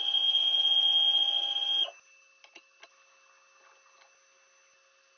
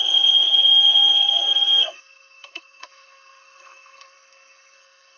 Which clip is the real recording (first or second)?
first